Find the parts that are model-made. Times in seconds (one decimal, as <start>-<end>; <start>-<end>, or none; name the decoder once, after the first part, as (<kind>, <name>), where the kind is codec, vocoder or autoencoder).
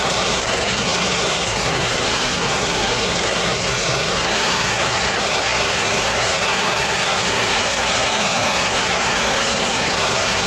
0.0-10.5 (codec, SNAC)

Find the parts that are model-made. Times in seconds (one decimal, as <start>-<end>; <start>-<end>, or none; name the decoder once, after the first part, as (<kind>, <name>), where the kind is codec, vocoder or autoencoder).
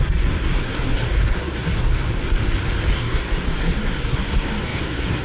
0.0-1.9 (codec, SNAC); 2.9-5.2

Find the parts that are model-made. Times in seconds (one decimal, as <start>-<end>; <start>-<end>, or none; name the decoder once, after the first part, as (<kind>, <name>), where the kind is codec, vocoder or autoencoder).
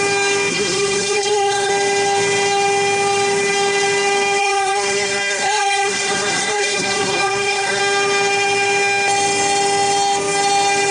0.5-1.7 (codec, SNAC); 4.4-7.8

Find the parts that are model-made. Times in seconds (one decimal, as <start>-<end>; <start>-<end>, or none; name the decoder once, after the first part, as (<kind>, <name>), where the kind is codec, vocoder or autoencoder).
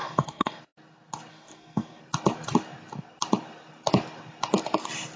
0.0-0.6 (codec, SNAC); 1.3-2.0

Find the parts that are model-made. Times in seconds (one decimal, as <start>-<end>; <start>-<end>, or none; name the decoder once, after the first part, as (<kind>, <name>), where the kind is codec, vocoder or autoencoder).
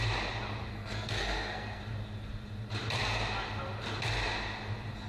0.7-1.8 (codec, SNAC)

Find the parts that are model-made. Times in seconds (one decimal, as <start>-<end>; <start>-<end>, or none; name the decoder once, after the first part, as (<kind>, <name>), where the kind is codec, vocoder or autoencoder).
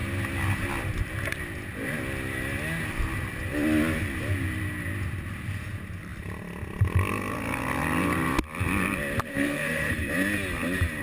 9.3-9.9 (codec, SNAC)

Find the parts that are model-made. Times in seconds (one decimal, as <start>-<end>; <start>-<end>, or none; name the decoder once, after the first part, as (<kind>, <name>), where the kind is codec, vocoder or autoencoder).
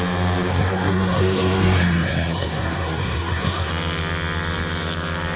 0.5-3.7 (codec, SNAC)